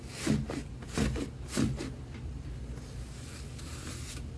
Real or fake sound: real